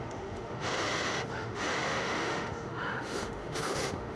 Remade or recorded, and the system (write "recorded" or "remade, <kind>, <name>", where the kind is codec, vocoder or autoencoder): remade, autoencoder, DAC-VAE